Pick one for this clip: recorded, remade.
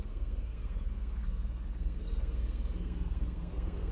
remade